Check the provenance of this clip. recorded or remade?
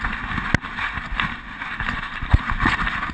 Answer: recorded